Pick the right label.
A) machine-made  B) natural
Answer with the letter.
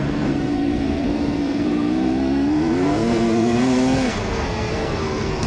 A